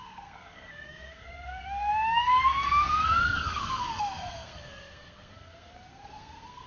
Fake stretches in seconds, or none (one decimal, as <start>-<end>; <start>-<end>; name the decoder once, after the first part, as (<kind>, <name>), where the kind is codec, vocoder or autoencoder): 0.0-6.7 (codec, SNAC)